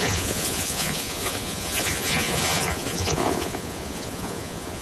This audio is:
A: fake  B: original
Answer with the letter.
A